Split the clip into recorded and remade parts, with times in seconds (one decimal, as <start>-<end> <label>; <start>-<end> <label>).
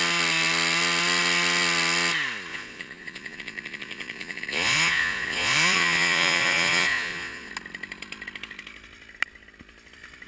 0.0-2.5 recorded; 2.5-7.5 remade; 7.5-10.3 recorded